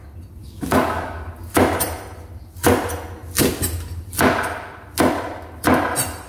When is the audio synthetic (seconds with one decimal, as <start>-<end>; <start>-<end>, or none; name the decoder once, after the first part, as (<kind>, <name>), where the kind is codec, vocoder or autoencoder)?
0.4-1.3 (codec, DAC)